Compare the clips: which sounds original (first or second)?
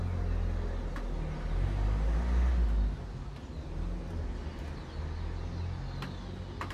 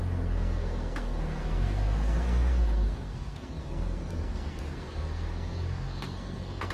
first